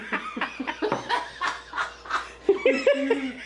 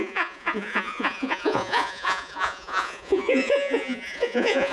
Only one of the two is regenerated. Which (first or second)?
second